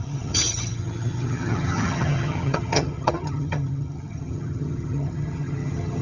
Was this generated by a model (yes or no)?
yes